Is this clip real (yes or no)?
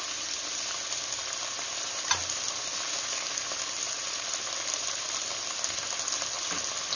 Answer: yes